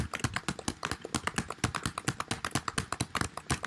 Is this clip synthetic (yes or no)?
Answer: no